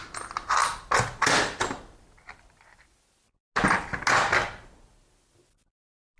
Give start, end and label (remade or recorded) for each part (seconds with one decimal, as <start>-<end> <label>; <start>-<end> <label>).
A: 0.0-6.2 recorded